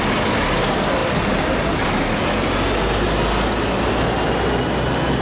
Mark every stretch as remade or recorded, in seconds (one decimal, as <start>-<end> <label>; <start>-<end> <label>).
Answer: 0.0-5.2 recorded